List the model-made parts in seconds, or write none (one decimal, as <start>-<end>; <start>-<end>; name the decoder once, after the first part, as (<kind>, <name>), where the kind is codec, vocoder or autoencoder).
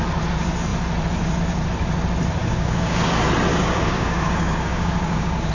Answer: 2.4-3.1 (codec, DAC); 3.5-5.5